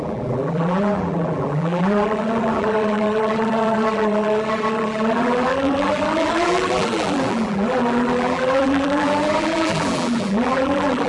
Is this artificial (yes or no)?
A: yes